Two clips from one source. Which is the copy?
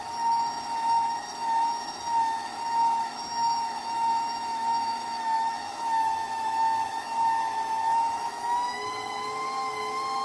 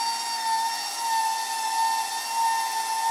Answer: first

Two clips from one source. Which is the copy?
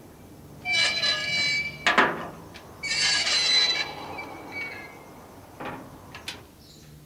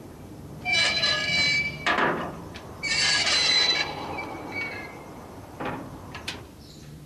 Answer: second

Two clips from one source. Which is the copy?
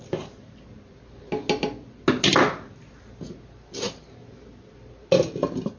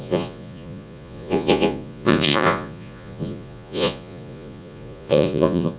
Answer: second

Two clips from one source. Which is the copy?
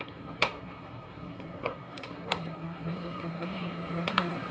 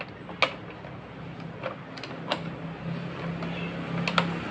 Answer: first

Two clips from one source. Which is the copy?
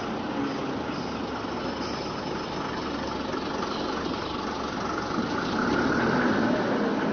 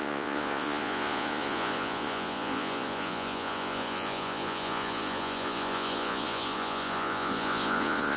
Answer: second